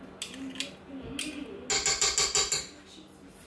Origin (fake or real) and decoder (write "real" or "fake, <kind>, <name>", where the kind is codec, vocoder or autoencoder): real